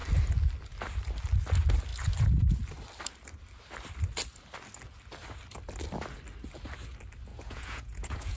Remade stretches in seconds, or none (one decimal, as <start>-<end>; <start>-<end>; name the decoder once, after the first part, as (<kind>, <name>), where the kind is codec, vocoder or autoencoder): 7.3-8.4 (vocoder, Vocos)